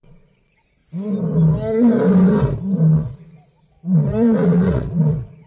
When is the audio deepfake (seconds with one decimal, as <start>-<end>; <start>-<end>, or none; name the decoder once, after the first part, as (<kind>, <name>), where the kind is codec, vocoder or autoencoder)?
0.0-0.8 (vocoder, Vocos); 2.9-5.5